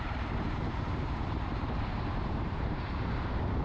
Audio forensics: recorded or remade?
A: remade